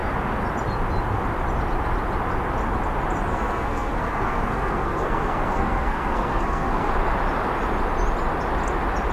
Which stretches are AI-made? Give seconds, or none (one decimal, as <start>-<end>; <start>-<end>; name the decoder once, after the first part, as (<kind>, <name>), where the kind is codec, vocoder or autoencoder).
3.3-6.9 (codec, SNAC)